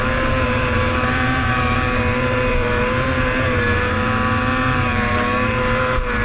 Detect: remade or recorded remade